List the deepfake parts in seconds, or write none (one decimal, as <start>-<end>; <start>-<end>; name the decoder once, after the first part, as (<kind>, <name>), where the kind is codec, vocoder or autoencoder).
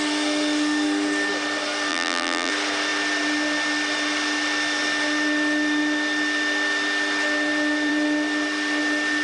1.9-2.5 (vocoder, BigVGAN v2)